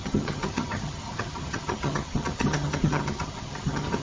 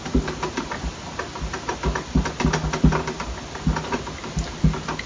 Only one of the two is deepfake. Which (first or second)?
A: first